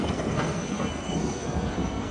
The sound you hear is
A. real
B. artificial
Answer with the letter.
B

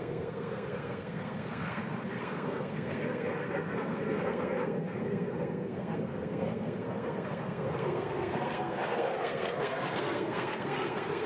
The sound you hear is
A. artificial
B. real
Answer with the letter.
A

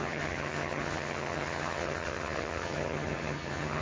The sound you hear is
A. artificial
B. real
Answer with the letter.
A